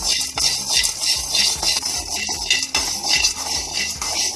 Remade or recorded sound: recorded